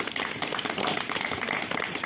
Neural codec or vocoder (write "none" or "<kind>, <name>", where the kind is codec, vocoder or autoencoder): none